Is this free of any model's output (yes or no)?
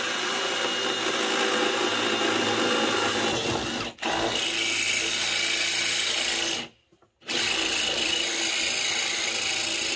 yes